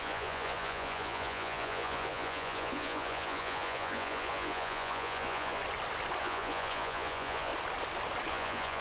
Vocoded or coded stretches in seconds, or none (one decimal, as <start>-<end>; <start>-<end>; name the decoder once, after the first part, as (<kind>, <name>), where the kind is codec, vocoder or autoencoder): 0.0-5.6 (vocoder, Vocos); 6.2-7.5; 8.3-8.8